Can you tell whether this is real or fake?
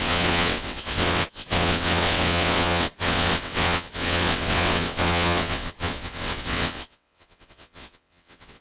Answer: fake